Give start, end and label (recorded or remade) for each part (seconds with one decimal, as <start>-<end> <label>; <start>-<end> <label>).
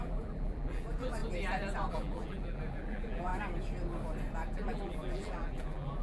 0.0-1.2 remade; 1.2-1.9 recorded; 1.9-3.3 remade; 3.3-4.5 recorded; 4.5-6.0 remade